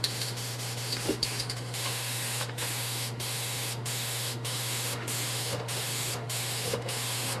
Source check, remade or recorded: remade